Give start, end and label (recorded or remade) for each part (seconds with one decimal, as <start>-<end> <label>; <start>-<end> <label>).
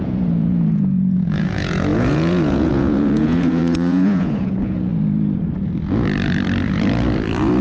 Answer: 0.0-4.9 remade; 4.9-7.6 recorded